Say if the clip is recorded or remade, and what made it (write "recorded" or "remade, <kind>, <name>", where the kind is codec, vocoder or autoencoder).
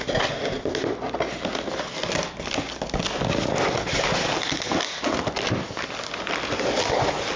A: recorded